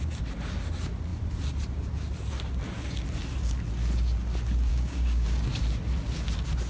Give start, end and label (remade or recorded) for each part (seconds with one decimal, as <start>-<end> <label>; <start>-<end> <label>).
0.0-4.7 recorded; 4.7-5.4 remade; 5.4-6.7 recorded